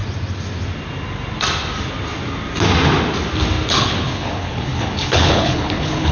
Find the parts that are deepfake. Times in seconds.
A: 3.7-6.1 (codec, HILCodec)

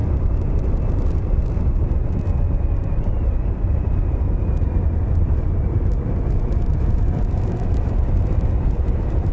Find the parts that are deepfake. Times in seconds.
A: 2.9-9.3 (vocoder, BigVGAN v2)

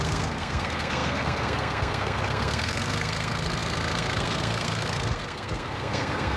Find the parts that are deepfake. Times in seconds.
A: 0.0-6.4 (codec, SNAC)

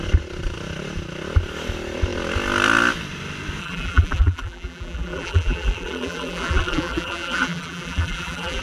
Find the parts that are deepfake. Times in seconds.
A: 3.6-8.6 (vocoder, BigVGAN v2)